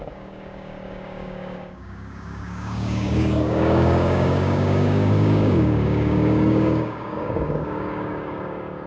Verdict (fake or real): fake